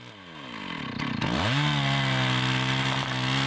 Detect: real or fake real